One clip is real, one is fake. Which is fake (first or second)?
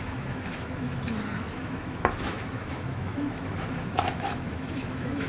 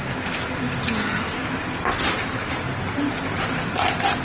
first